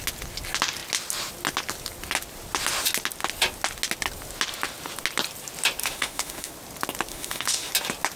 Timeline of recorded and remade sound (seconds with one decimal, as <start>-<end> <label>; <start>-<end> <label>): 0.0-5.8 recorded; 5.8-6.5 remade; 6.5-7.1 recorded; 7.1-7.7 remade; 7.7-8.2 recorded